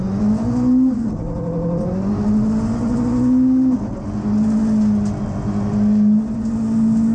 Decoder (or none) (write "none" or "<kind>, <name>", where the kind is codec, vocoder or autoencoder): none